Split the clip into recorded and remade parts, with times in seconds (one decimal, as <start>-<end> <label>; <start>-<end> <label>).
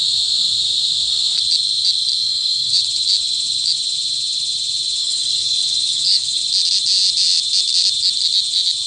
0.0-2.2 recorded; 2.2-2.8 remade; 2.8-5.0 recorded; 5.0-6.4 remade; 6.4-8.9 recorded